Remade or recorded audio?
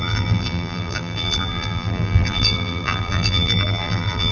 remade